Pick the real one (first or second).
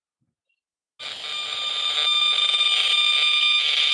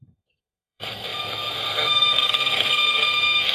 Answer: first